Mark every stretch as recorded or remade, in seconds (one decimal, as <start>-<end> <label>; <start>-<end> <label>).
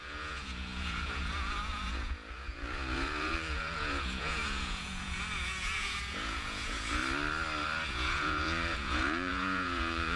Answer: 0.0-7.0 remade; 7.0-7.9 recorded; 7.9-10.2 remade